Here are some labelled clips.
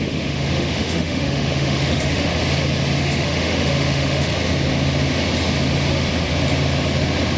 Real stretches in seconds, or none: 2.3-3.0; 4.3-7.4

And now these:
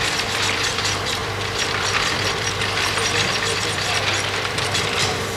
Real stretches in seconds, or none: none